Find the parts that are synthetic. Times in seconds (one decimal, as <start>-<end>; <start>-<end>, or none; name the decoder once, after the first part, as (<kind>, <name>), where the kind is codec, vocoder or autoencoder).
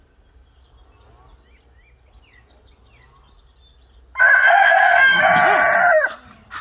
4.6-5.2 (codec, SNAC)